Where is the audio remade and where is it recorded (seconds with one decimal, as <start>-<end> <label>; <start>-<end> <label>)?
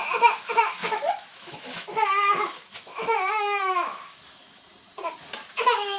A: 0.0-4.7 remade; 4.7-5.6 recorded; 5.6-6.0 remade